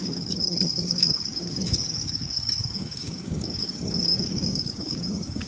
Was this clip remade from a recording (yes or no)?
yes